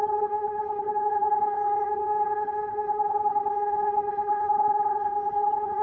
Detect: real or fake fake